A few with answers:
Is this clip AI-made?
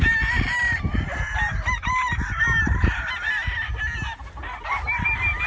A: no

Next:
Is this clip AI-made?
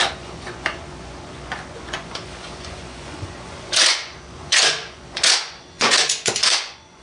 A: yes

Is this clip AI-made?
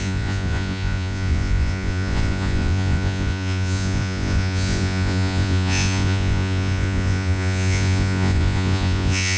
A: yes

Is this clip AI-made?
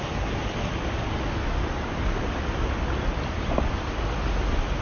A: no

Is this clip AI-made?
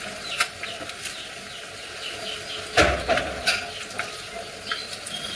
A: no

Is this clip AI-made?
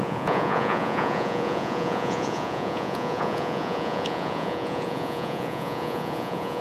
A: yes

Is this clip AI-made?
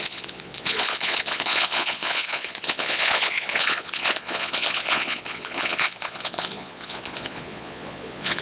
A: yes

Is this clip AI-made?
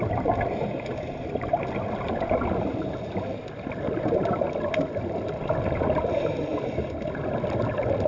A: no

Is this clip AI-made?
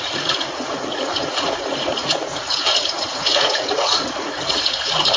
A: yes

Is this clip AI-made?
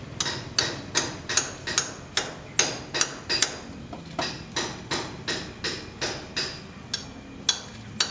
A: no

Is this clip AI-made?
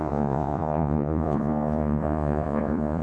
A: yes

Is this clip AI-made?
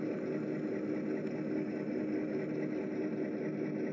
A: no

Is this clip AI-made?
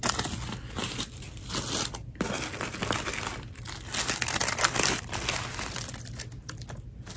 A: no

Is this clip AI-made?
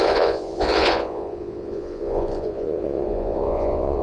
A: yes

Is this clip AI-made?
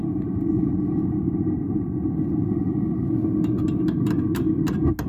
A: no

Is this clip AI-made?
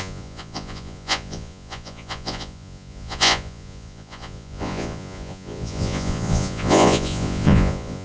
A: yes